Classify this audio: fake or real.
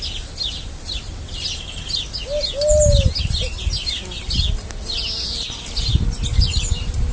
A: real